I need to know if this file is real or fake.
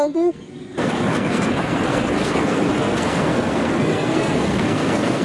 fake